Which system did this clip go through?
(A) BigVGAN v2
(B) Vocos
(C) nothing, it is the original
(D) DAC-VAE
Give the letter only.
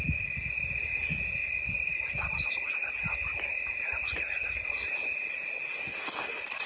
C